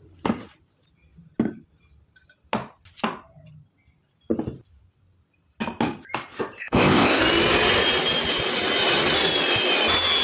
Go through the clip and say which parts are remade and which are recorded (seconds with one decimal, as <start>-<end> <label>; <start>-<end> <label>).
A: 0.0-6.6 recorded; 6.6-7.2 remade; 7.2-10.2 recorded